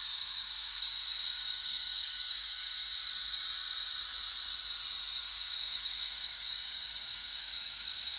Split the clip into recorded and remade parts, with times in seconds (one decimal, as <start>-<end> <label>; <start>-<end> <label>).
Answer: 0.0-3.0 remade; 3.0-5.2 recorded; 5.2-8.2 remade